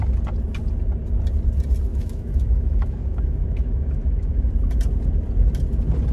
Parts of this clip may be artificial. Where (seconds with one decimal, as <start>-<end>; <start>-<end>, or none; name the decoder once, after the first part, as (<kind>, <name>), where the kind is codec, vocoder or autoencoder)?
1.9-4.5 (autoencoder, DAC-VAE)